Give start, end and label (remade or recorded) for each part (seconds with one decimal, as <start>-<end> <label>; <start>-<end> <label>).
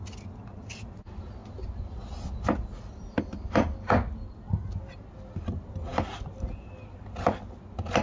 0.0-8.0 recorded